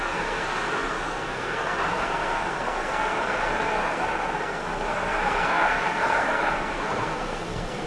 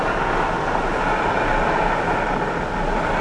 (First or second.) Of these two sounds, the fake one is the first